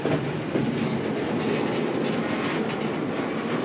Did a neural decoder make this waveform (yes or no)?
no